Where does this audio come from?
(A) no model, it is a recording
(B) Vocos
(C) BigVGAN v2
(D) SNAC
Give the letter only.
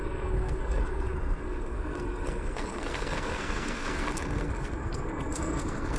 D